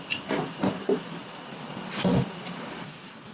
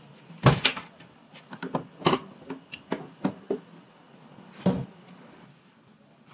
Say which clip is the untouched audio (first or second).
second